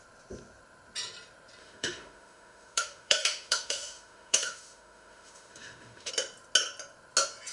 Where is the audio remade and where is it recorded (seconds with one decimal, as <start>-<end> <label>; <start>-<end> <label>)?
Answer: 0.0-1.6 recorded; 1.6-6.1 remade; 6.1-7.5 recorded